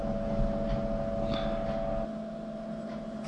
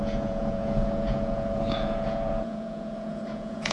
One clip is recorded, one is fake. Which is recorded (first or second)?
first